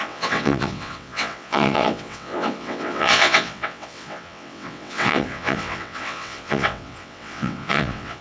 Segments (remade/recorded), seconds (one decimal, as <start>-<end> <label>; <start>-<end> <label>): 0.0-8.2 remade